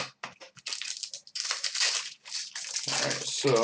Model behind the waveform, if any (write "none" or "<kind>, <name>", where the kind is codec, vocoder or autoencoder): none